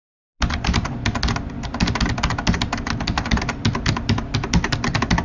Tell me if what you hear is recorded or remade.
recorded